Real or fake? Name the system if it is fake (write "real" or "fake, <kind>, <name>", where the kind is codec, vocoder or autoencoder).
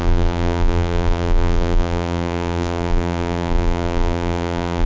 fake, vocoder, BigVGAN v2